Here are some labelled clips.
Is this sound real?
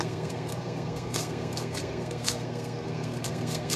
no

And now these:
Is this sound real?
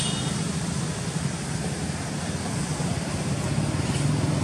yes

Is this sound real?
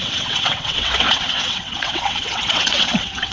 no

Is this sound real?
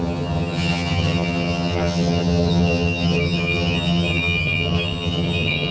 no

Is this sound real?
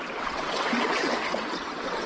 no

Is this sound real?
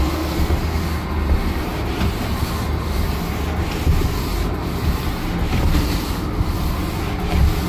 yes